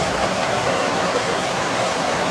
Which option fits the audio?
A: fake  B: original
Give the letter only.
A